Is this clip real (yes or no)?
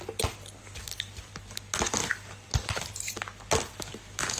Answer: yes